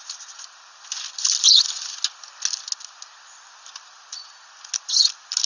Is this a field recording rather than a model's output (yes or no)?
yes